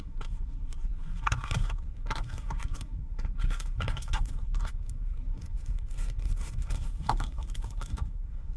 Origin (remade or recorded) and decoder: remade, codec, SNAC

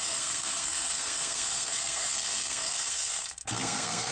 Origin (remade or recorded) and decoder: remade, codec, SNAC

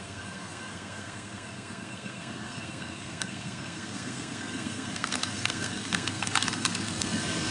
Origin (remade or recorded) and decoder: remade, codec, SNAC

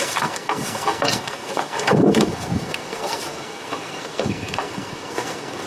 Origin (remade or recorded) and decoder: remade, codec, SNAC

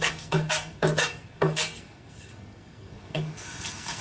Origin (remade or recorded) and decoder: remade, codec, SNAC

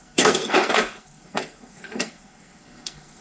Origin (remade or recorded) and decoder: remade, codec, SNAC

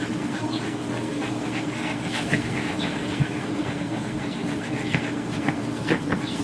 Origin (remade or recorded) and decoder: remade, codec, SNAC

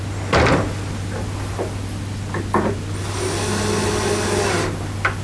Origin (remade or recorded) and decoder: recorded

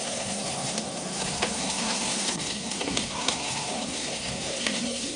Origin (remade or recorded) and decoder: remade, codec, SNAC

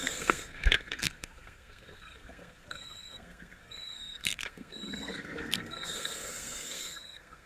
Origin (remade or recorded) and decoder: remade, codec, SNAC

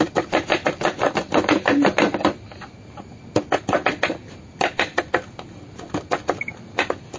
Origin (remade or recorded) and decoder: recorded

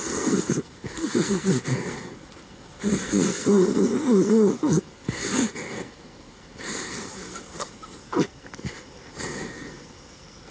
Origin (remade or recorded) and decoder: remade, codec, SNAC